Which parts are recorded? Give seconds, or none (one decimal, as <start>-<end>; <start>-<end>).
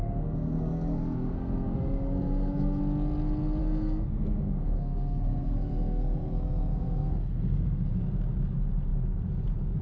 2.8-3.6; 7.9-9.8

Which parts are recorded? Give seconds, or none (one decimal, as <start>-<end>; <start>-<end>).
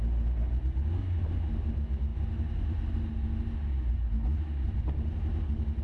0.0-5.8